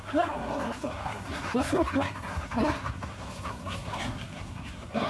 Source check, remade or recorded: remade